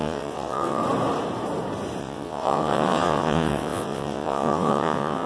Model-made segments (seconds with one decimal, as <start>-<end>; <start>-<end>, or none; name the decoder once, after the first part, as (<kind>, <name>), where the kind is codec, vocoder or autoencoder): 0.0-0.8 (vocoder, WaveNeXt); 2.0-5.3